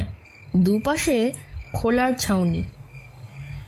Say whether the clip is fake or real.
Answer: fake